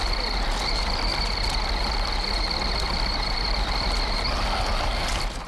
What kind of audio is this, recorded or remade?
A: recorded